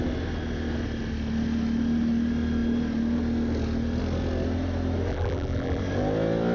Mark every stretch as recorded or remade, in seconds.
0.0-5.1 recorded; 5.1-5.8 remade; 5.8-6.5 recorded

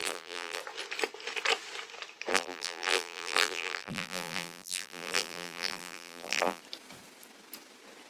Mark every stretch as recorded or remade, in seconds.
0.0-0.6 remade; 0.6-2.3 recorded; 2.3-6.6 remade; 6.6-8.1 recorded

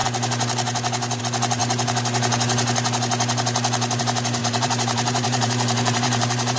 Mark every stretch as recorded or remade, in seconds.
0.0-4.4 recorded; 4.4-6.6 remade

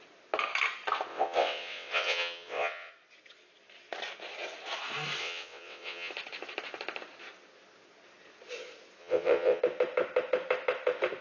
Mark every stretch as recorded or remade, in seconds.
0.0-1.1 recorded; 1.1-2.9 remade; 2.9-5.2 recorded; 5.2-6.1 remade; 6.1-9.0 recorded; 9.0-9.6 remade; 9.6-11.2 recorded

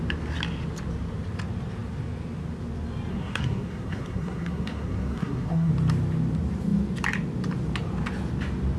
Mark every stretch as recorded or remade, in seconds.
0.0-3.1 recorded; 3.1-5.7 remade; 5.7-8.8 recorded

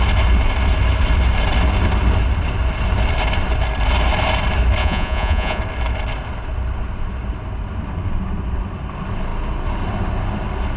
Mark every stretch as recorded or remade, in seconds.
0.0-4.8 recorded; 4.8-5.6 remade; 5.6-10.8 recorded

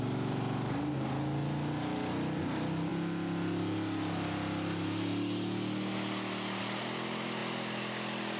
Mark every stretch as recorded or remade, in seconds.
0.0-8.4 recorded

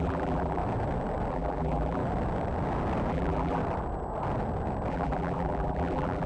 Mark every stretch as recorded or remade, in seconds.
0.0-0.6 remade; 0.6-1.3 recorded; 1.3-2.0 remade; 2.0-3.1 recorded; 3.1-3.6 remade; 3.6-4.9 recorded; 4.9-6.3 remade